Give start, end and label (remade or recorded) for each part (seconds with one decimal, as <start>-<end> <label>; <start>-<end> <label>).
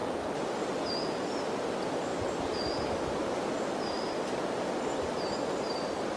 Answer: 0.0-0.9 remade; 0.9-6.2 recorded